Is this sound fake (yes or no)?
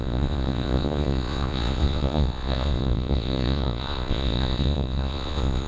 yes